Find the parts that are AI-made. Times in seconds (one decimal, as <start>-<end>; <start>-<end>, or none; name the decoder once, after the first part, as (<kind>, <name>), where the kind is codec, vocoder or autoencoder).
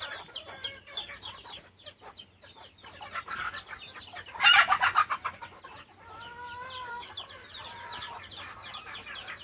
none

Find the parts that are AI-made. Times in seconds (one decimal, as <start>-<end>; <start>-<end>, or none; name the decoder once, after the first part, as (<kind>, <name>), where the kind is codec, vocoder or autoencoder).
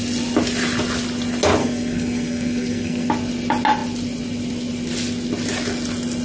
1.6-3.1 (codec, SNAC)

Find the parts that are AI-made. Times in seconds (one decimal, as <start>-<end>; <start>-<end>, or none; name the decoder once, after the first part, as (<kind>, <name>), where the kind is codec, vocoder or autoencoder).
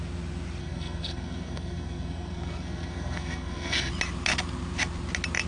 0.6-3.9 (codec, SNAC)